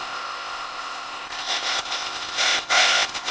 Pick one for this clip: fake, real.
fake